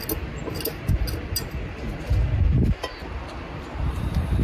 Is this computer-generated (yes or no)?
no